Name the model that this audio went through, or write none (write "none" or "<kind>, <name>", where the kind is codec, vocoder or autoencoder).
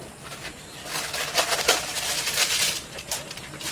none